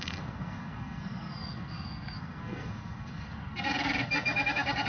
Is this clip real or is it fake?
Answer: fake